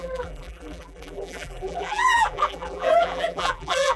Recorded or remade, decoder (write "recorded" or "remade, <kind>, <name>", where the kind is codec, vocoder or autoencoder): remade, vocoder, BigVGAN v2